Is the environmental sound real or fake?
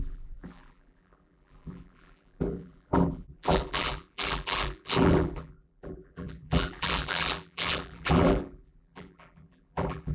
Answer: fake